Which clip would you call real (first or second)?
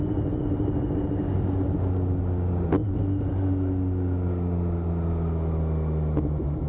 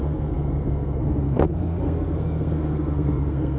first